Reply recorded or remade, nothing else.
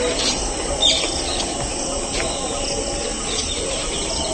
recorded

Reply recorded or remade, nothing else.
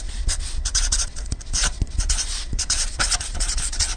remade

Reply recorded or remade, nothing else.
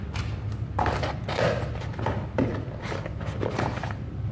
recorded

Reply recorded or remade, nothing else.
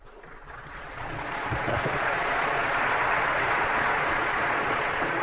remade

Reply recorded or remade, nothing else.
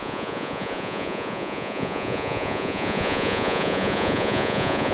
remade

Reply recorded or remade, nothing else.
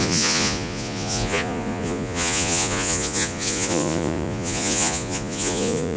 remade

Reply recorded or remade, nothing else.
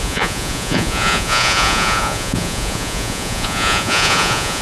remade